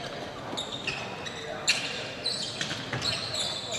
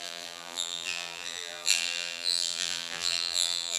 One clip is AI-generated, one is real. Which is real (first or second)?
first